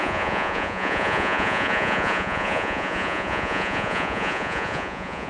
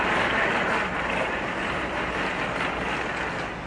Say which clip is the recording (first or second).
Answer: second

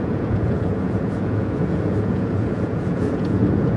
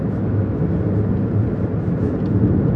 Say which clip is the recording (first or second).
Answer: second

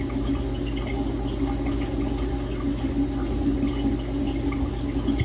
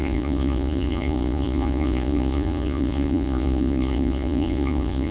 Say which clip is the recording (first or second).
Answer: first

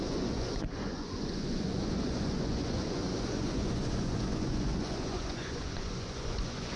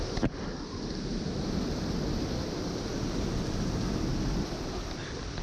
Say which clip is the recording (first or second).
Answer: second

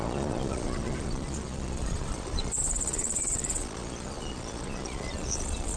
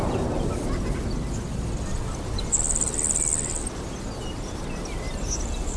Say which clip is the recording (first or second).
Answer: second